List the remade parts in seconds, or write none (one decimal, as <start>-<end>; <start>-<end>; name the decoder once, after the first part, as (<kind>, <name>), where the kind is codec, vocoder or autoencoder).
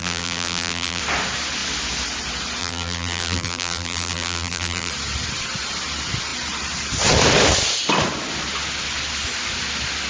0.0-1.0 (vocoder, BigVGAN v2); 2.6-4.9